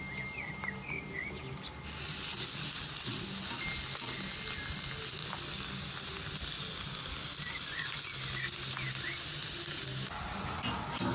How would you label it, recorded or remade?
recorded